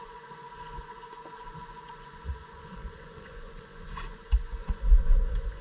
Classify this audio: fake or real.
fake